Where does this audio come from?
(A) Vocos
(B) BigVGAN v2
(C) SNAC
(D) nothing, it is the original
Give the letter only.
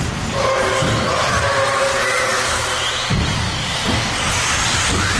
D